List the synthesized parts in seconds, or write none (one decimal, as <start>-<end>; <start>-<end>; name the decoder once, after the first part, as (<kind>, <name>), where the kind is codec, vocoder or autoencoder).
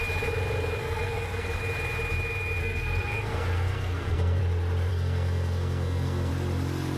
0.8-1.6 (codec, SNAC); 2.6-4.4; 4.9-6.3